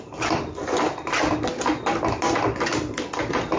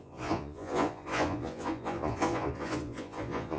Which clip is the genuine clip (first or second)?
first